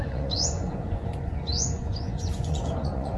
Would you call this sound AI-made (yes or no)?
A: yes